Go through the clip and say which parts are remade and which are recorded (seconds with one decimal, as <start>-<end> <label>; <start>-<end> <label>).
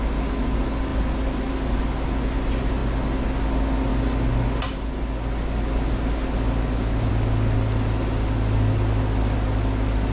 0.0-10.1 recorded